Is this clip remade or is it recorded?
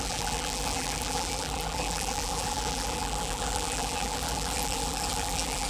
remade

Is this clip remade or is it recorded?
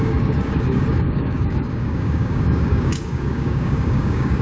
remade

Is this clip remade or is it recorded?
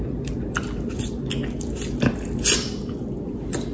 recorded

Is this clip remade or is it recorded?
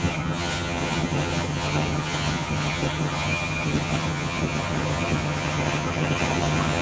remade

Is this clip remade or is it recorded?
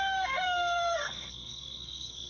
remade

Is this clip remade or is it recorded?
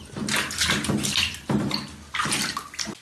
recorded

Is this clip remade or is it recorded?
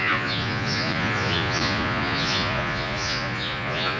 remade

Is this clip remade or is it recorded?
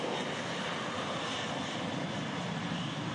recorded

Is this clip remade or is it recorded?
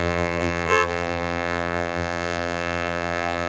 remade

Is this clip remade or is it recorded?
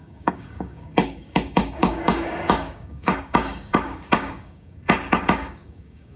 remade